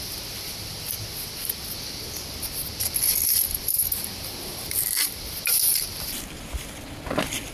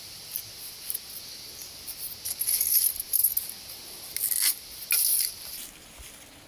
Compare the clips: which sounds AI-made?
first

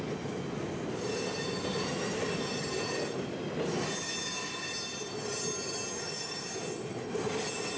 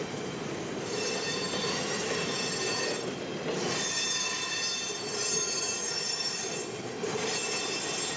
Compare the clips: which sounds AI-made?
second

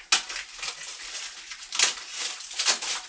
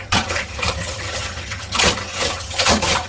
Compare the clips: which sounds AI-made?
second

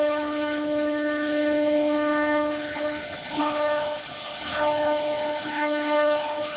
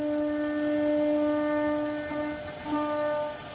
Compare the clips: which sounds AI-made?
first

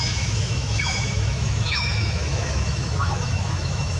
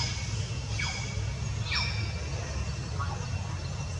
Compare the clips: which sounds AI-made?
first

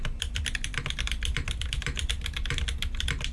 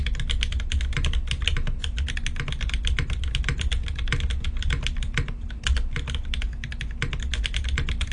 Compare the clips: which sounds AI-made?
first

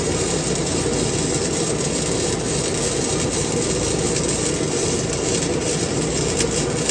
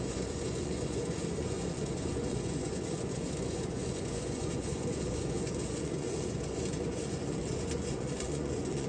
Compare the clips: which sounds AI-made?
second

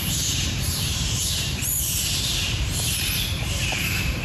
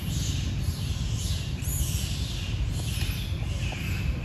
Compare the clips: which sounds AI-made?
first